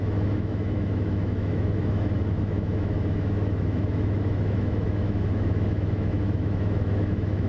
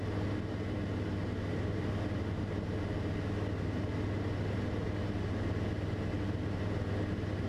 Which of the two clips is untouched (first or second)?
second